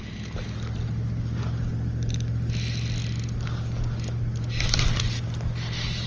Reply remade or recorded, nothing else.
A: recorded